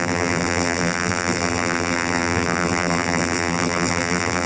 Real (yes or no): no